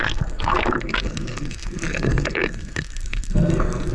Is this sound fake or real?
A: fake